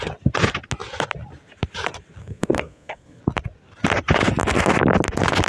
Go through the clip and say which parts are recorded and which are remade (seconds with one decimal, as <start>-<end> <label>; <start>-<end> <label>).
0.0-2.2 recorded; 2.2-3.2 remade; 3.2-5.5 recorded